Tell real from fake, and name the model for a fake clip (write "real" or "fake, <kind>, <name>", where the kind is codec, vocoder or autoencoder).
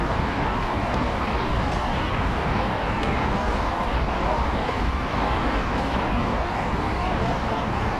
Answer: fake, codec, DAC